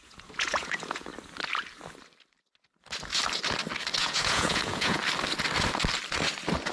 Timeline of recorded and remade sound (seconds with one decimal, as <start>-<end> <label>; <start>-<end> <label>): 0.0-1.1 remade; 1.1-4.0 recorded; 4.0-5.0 remade; 5.0-6.7 recorded